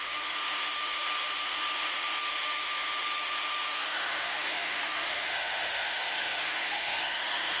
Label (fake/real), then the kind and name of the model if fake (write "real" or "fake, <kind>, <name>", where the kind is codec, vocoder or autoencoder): fake, autoencoder, DAC-VAE